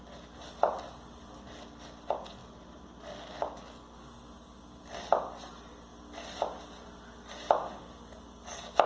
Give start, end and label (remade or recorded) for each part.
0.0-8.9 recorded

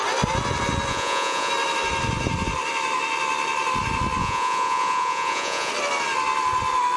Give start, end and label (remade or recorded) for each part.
0.0-0.9 recorded; 0.9-1.5 remade; 1.5-4.2 recorded; 4.2-5.7 remade; 5.7-7.0 recorded

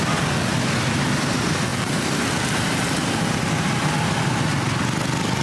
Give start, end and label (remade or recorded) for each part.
0.0-1.7 recorded; 1.7-3.7 remade; 3.7-5.4 recorded

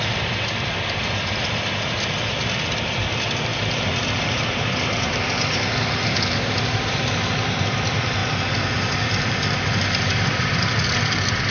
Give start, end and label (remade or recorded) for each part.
0.0-8.2 remade; 8.2-10.1 recorded; 10.1-11.5 remade

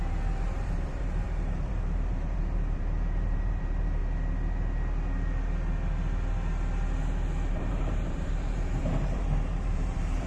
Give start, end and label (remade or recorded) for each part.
0.0-4.0 remade; 4.0-7.5 recorded; 7.5-10.3 remade

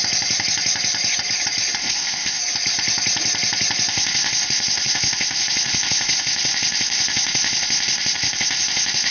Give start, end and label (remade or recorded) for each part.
0.0-1.8 recorded; 1.8-2.4 remade; 2.4-3.9 recorded; 3.9-9.1 remade

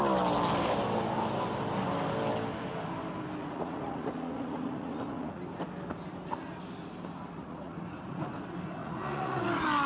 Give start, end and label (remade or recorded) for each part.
0.0-3.4 recorded; 3.4-5.4 remade; 5.4-7.4 recorded; 7.4-8.3 remade; 8.3-8.8 recorded; 8.8-9.4 remade; 9.4-9.9 recorded

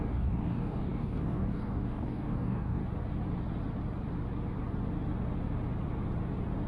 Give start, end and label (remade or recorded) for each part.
0.0-2.8 remade; 2.8-6.7 recorded